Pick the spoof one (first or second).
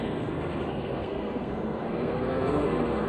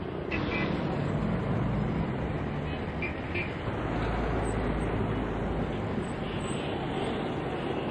first